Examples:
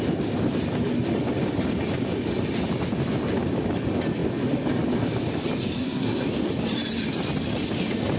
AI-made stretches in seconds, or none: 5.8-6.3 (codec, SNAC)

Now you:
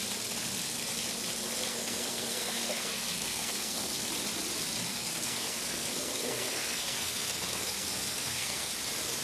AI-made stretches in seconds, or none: 1.7-4.1 (codec, SNAC); 4.9-8.7